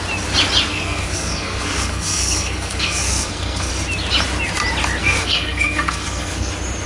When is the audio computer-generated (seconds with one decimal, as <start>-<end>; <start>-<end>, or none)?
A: 0.7-3.7; 5.0-6.5